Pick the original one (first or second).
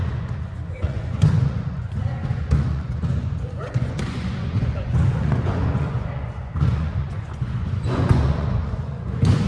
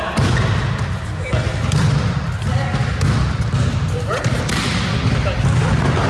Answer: second